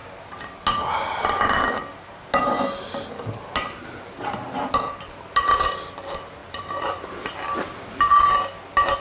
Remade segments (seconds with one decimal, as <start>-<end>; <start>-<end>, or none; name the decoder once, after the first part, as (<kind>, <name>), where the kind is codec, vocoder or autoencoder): none